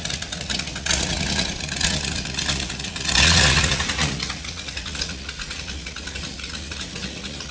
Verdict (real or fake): fake